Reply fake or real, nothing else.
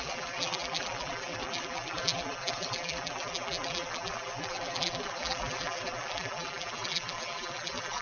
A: fake